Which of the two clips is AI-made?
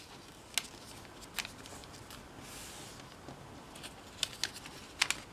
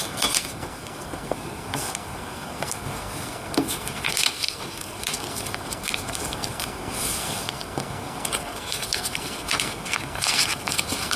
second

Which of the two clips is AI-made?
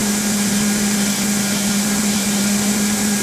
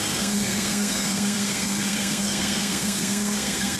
second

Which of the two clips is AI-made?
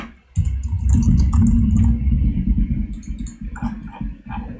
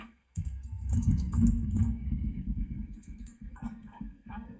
second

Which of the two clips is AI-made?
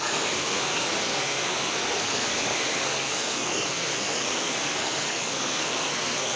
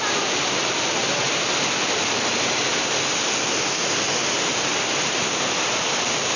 first